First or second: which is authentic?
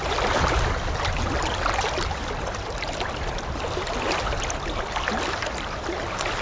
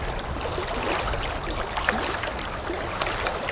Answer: second